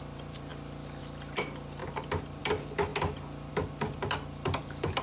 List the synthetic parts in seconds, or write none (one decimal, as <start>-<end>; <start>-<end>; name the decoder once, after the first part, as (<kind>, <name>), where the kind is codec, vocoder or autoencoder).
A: 0.0-0.5 (vocoder, BigVGAN v2); 1.0-1.8; 2.4-2.9; 3.5-5.0